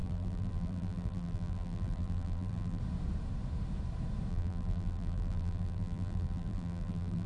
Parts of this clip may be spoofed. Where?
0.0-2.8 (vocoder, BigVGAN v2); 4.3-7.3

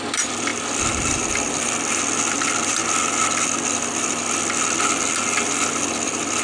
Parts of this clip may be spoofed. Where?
0.0-2.8 (vocoder, BigVGAN v2); 6.0-6.4

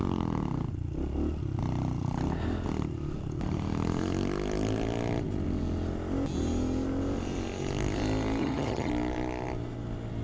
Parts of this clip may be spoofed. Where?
8.4-8.9 (vocoder, HiFi-GAN)

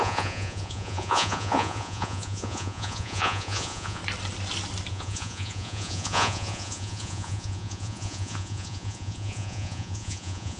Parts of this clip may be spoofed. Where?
0.0-4.0 (vocoder, Vocos); 4.9-10.6

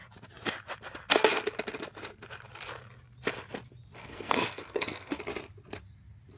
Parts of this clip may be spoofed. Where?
4.0-5.2 (codec, SNAC)

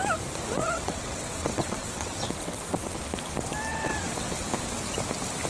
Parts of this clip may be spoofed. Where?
0.6-3.0 (vocoder, WaveNeXt); 3.7-4.3

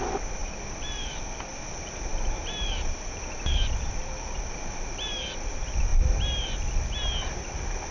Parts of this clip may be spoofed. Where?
0.0-1.5 (vocoder, BigVGAN v2); 2.4-5.9; 7.5-7.9

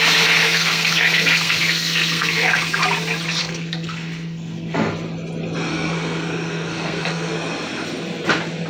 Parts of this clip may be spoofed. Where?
0.4-2.8 (codec, SNAC); 3.4-4.9; 5.7-7.3